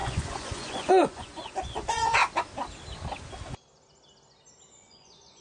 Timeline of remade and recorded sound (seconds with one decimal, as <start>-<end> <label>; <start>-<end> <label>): 0.0-2.2 remade; 2.2-4.8 recorded; 4.8-5.4 remade